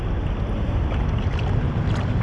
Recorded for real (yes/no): yes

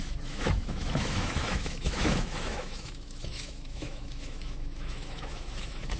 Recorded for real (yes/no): no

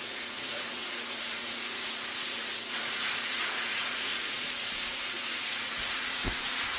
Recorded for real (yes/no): no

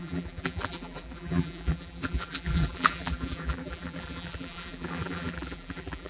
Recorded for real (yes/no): no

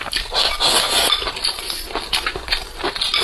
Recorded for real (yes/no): yes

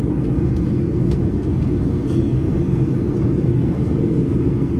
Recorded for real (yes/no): no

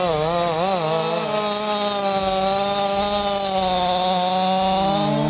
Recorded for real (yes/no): yes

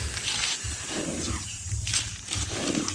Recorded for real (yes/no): yes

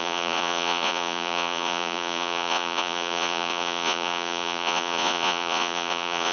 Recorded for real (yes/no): no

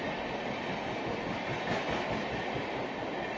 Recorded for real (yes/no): yes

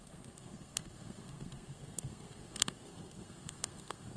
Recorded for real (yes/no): no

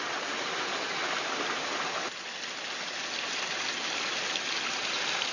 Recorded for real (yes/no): yes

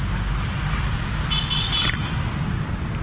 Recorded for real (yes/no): yes